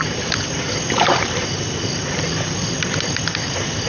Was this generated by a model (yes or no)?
no